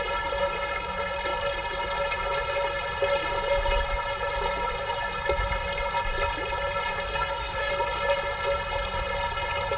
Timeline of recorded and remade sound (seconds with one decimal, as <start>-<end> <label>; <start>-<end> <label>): 0.0-7.1 recorded; 7.1-7.7 remade; 7.7-9.8 recorded